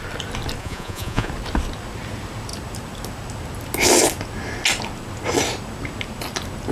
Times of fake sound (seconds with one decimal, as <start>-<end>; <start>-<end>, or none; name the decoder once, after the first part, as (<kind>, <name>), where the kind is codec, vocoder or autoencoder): 0.6-1.3 (vocoder, Vocos)